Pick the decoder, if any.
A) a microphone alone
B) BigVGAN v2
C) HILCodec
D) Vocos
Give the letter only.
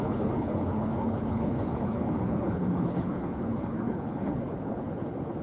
C